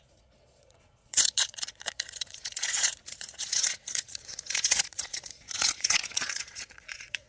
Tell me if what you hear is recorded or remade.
remade